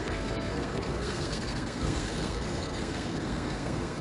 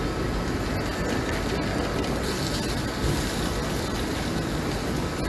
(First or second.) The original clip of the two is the second